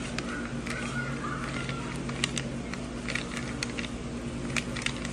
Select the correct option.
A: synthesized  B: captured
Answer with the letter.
B